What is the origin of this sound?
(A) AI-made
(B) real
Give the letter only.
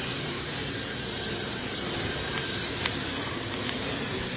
A